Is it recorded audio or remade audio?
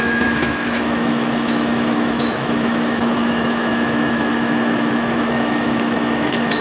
remade